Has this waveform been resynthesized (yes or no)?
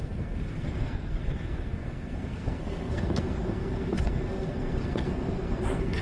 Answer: yes